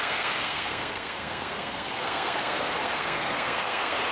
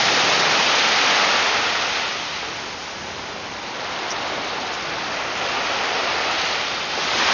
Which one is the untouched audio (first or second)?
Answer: second